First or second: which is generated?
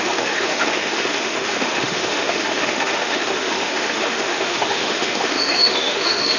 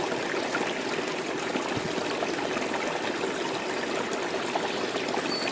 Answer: first